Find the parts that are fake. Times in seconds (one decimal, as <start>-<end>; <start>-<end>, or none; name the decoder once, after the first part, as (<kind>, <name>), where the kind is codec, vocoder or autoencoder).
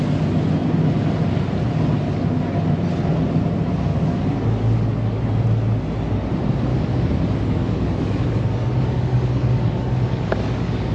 3.9-5.2 (codec, DAC); 6.7-10.9